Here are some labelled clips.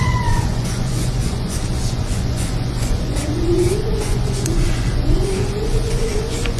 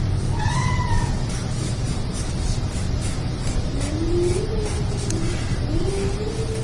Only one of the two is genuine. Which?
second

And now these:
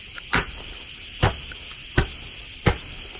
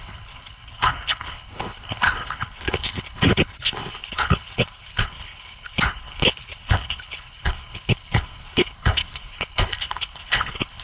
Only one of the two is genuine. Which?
first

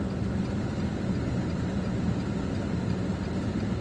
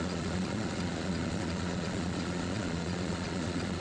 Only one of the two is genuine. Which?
first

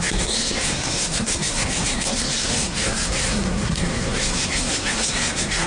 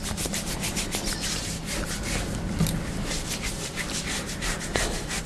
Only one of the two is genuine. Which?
second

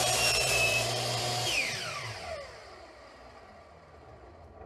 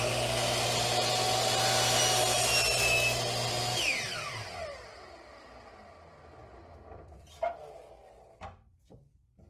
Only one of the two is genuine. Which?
second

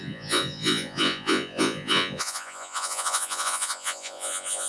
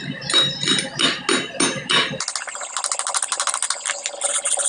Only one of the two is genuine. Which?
second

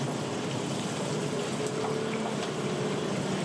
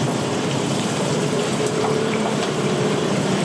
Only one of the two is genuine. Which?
first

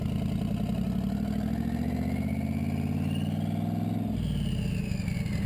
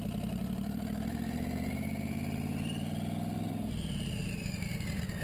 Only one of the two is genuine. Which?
first